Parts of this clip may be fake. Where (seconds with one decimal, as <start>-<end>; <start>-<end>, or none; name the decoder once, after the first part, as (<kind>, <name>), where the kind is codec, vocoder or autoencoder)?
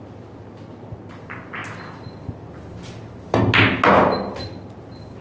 none